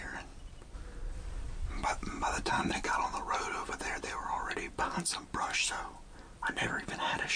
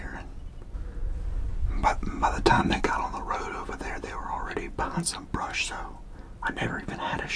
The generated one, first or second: first